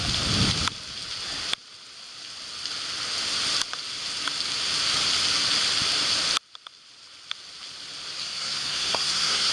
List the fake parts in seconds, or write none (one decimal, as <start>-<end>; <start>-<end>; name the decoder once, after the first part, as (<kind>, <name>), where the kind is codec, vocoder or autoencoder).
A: 8.2-9.5 (codec, SNAC)